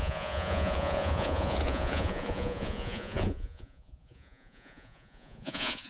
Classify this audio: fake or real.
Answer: fake